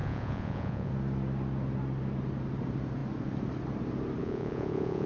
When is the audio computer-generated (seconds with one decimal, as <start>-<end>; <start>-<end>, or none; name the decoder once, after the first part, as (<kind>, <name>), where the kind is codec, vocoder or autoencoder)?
0.0-0.9 (vocoder, Vocos); 4.2-5.1